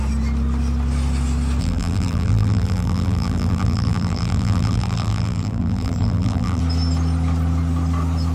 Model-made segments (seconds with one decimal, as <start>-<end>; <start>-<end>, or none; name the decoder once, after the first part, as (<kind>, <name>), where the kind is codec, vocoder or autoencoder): 1.6-6.6 (vocoder, BigVGAN v2)